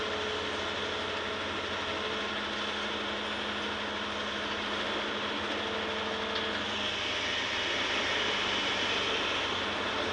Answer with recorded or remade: recorded